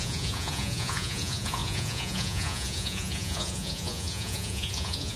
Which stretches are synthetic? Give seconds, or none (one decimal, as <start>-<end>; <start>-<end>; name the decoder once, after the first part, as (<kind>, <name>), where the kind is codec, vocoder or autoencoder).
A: 0.0-5.2 (vocoder, Vocos)